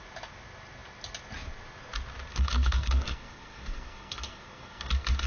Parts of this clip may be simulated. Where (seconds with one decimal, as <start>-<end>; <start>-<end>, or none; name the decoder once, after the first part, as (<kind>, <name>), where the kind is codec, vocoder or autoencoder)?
2.3-5.3 (codec, SNAC)